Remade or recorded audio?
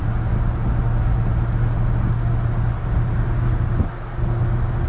recorded